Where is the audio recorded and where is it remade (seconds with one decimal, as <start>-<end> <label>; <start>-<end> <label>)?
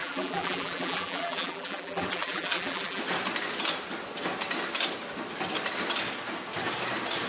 0.0-3.0 remade; 3.0-7.3 recorded